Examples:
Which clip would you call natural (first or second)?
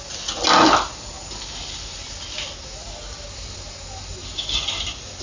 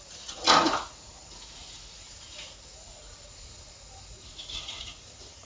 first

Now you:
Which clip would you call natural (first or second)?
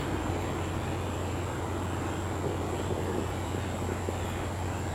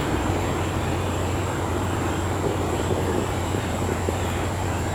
first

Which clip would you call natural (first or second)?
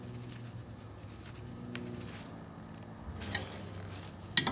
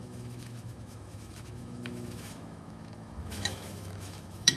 first